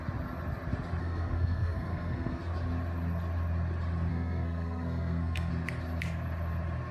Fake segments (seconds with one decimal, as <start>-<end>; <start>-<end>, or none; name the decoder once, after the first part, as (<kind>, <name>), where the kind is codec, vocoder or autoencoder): 1.0-2.4 (codec, SNAC); 4.1-5.5